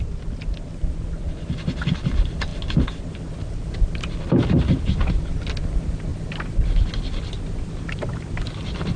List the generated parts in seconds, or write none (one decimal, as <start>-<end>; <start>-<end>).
none